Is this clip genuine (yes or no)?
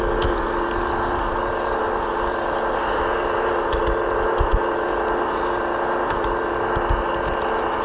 yes